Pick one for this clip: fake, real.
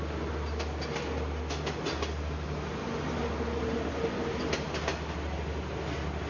real